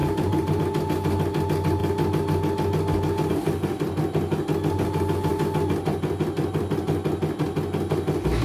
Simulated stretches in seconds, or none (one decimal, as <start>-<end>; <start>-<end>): 0.0-0.6